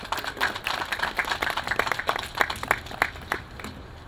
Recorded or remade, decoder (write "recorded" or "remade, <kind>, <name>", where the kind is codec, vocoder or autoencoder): recorded